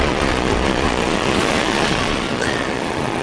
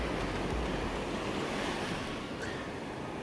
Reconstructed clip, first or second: first